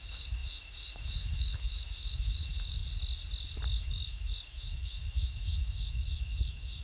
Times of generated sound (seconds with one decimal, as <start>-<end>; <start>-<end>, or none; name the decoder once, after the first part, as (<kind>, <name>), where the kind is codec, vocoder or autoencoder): 0.0-2.8 (autoencoder, DAC-VAE); 3.8-6.8